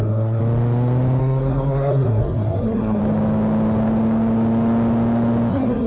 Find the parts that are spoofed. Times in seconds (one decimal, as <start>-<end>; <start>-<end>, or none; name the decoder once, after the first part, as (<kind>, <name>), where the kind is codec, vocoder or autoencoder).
0.0-0.4 (codec, SNAC); 1.2-3.0; 5.5-5.9